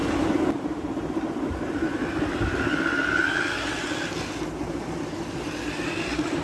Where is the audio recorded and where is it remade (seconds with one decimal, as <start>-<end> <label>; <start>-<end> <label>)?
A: 0.0-6.4 recorded